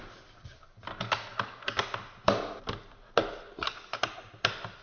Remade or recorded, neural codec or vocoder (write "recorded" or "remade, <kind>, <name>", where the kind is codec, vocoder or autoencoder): recorded